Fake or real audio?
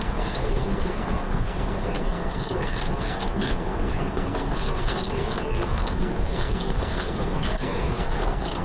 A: fake